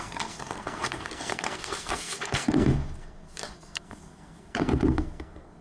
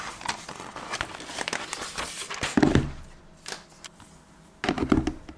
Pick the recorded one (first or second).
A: second